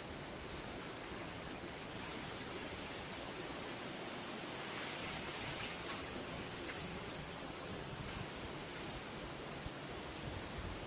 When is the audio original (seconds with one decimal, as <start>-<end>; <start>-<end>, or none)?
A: 0.0-1.1; 3.7-5.0; 8.0-10.9